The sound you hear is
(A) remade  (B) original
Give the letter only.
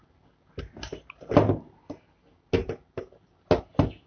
B